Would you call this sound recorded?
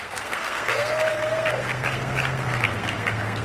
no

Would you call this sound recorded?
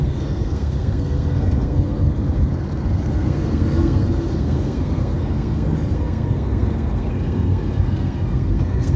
no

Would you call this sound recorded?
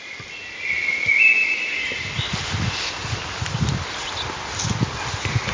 yes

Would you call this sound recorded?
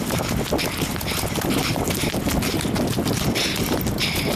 yes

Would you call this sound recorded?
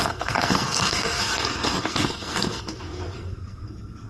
no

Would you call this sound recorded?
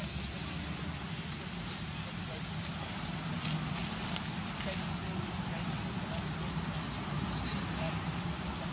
yes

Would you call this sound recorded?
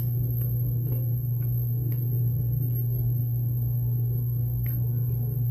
no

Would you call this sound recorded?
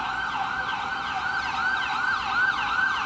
yes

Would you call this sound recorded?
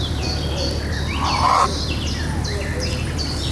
yes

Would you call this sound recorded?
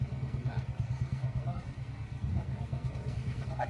no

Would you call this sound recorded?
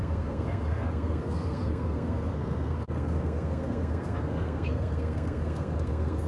no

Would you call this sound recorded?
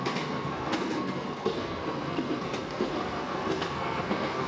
no